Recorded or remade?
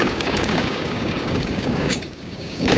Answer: remade